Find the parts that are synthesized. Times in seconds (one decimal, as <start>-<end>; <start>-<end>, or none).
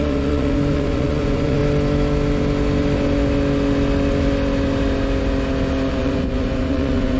0.0-1.6; 5.9-7.2